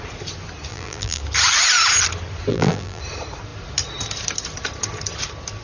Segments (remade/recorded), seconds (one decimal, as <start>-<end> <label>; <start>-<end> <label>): 0.0-0.7 recorded; 0.7-1.2 remade; 1.2-2.5 recorded; 2.5-3.0 remade; 3.0-5.6 recorded